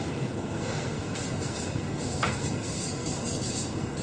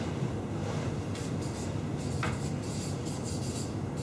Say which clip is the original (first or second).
second